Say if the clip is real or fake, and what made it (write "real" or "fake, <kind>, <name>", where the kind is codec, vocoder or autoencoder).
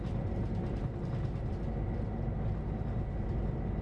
real